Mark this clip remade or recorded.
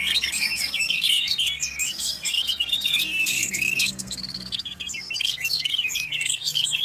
remade